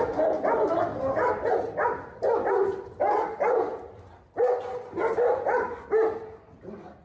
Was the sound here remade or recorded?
recorded